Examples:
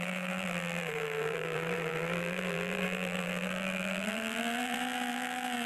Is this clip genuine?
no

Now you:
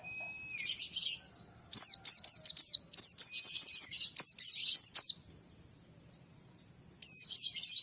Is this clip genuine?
yes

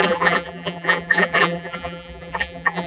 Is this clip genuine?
no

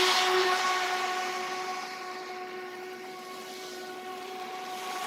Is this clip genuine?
no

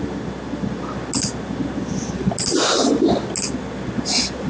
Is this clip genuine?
yes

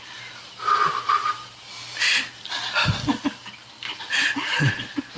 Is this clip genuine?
yes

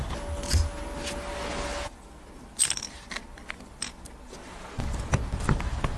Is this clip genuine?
yes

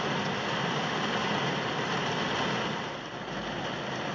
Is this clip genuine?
yes